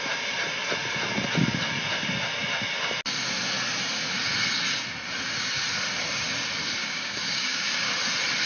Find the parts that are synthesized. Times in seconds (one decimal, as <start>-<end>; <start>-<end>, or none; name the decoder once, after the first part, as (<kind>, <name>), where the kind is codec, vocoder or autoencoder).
6.8-7.9 (codec, DAC)